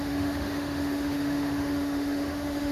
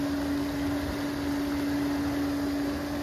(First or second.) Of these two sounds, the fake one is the first